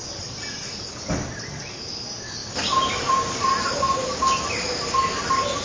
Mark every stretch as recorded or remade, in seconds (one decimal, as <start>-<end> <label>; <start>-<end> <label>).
0.0-2.4 recorded; 2.4-3.4 remade; 3.4-5.6 recorded